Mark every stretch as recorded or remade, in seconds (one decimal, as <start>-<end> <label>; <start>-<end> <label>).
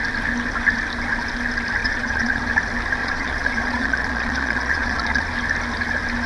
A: 0.0-1.8 recorded; 1.8-2.4 remade; 2.4-3.0 recorded; 3.0-5.2 remade; 5.2-6.3 recorded